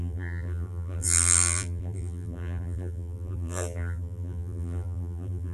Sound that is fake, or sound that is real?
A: fake